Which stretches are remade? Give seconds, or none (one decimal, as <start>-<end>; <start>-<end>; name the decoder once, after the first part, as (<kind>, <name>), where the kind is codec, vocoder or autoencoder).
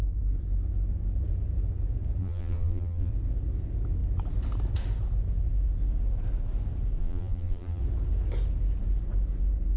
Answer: 2.2-3.1 (vocoder, BigVGAN v2); 7.0-7.8